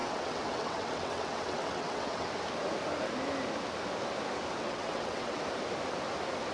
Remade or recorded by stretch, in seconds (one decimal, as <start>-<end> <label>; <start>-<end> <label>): 0.0-2.3 remade; 2.3-4.6 recorded; 4.6-5.4 remade; 5.4-6.5 recorded

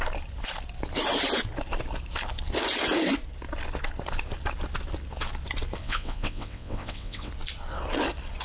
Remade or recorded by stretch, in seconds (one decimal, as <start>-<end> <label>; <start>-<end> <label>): 0.0-5.8 recorded; 5.8-7.3 remade; 7.3-8.4 recorded